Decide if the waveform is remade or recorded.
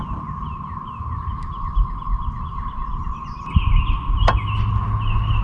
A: recorded